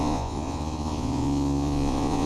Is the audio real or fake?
fake